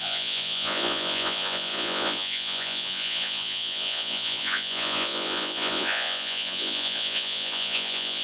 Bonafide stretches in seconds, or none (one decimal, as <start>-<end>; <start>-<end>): none